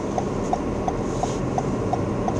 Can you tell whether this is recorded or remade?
recorded